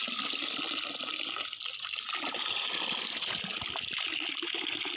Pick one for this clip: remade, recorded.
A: recorded